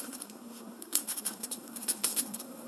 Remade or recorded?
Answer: remade